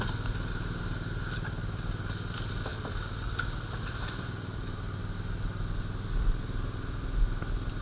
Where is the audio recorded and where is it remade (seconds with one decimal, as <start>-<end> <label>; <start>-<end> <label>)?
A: 0.0-7.8 recorded